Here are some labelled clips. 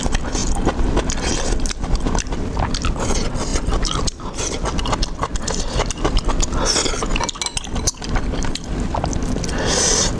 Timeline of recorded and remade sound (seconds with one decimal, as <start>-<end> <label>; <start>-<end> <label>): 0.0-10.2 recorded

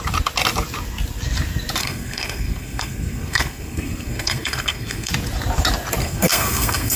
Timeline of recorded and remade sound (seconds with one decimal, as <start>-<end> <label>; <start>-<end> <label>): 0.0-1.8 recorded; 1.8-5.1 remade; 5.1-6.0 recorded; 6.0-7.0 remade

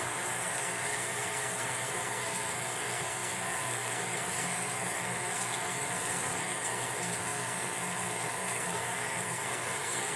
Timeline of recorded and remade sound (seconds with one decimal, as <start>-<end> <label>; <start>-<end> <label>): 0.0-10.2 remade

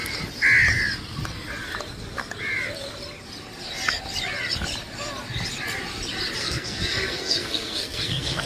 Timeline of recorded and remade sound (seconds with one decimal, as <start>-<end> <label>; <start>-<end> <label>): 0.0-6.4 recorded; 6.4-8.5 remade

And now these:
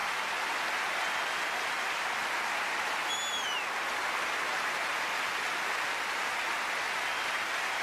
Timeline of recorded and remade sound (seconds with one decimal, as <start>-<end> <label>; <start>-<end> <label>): 0.0-7.8 recorded

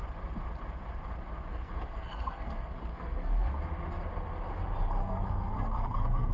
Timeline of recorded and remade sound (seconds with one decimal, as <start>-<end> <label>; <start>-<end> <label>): 0.0-1.5 recorded; 1.5-3.5 remade; 3.5-5.0 recorded; 5.0-6.3 remade

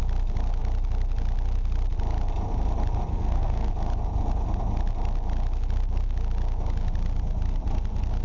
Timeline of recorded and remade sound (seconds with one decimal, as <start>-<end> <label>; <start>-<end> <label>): 0.0-3.1 recorded; 3.1-3.7 remade; 3.7-8.2 recorded

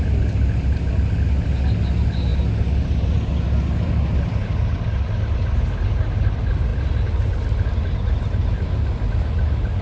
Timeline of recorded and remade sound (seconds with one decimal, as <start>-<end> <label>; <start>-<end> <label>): 0.0-9.8 recorded